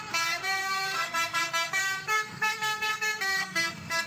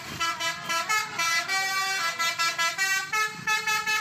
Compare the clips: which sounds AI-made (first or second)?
first